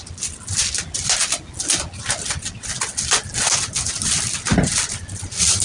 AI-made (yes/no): no